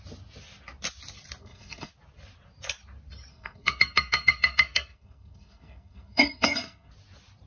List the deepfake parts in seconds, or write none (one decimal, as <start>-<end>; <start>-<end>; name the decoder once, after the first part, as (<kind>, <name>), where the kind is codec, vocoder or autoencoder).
1.4-1.9 (codec, SNAC); 3.3-6.9